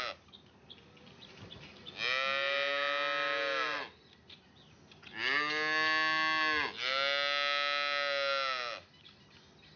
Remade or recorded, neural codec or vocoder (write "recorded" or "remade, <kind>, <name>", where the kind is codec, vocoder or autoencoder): recorded